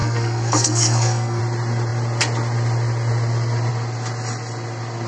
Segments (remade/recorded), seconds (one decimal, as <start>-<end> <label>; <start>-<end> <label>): 0.0-1.4 remade; 1.4-5.1 recorded